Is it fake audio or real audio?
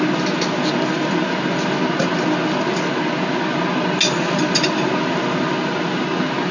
real